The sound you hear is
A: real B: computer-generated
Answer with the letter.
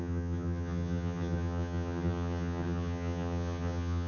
B